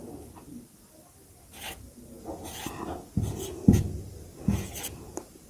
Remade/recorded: recorded